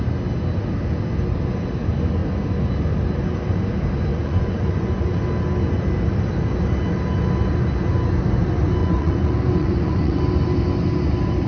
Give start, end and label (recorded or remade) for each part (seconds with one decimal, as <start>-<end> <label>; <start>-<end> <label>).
0.0-4.1 recorded; 4.1-5.2 remade; 5.2-8.8 recorded; 8.8-10.2 remade; 10.2-11.5 recorded